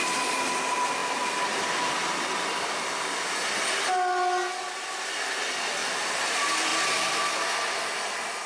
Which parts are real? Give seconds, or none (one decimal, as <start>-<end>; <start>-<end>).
0.0-8.5